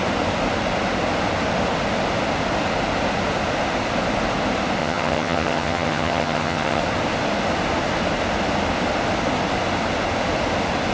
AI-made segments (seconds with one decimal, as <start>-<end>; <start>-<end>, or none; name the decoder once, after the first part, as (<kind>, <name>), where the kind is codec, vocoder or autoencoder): 4.8-6.8 (vocoder, HiFi-GAN)